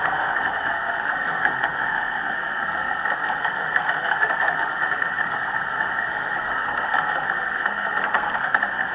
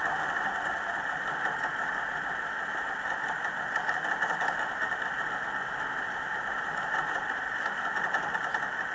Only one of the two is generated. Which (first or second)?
first